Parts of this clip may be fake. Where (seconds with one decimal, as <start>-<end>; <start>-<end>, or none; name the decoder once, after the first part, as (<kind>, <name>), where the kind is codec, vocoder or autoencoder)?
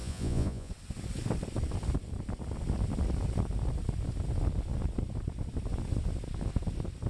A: 0.0-0.7 (vocoder, Vocos)